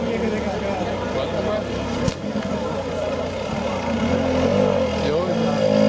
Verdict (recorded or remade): recorded